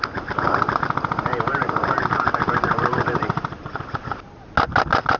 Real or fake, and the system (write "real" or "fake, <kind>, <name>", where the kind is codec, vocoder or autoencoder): real